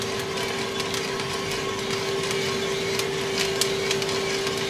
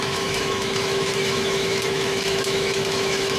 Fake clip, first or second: second